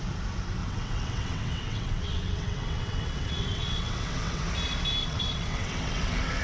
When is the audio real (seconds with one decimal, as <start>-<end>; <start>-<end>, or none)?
0.0-0.6; 4.4-5.0